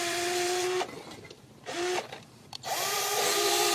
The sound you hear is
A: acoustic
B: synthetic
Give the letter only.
B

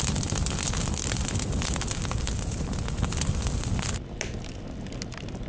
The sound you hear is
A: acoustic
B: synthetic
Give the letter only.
A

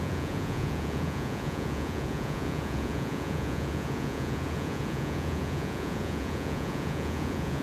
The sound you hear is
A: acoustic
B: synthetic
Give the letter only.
B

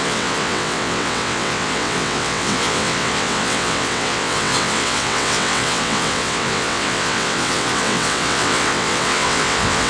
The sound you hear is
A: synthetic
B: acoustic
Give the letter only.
A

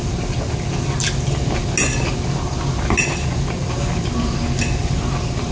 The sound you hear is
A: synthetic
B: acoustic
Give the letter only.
B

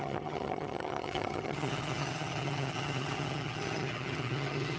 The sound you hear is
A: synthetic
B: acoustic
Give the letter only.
A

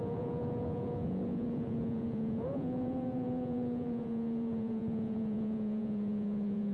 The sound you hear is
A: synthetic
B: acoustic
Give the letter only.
A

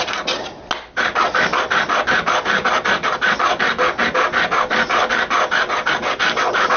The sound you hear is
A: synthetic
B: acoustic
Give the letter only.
B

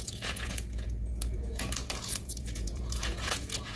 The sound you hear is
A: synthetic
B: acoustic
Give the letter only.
A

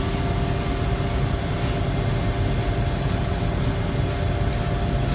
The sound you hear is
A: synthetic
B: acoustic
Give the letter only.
B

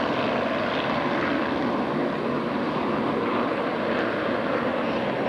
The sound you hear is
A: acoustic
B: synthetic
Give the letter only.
A